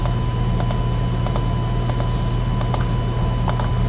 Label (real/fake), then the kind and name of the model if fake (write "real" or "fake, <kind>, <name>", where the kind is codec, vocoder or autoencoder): real